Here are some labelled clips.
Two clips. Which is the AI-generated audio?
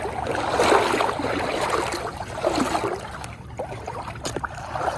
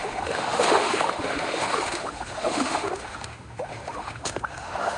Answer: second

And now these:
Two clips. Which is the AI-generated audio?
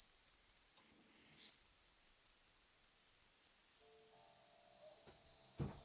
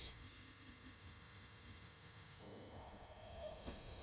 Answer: second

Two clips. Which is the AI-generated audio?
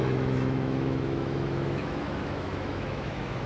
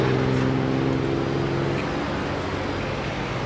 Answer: first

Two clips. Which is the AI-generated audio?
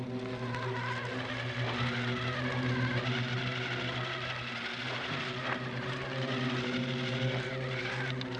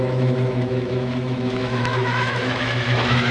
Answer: second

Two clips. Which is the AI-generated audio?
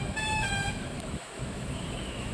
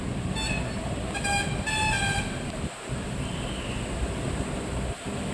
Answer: first